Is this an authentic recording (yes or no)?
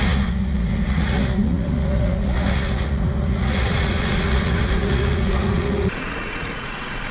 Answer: no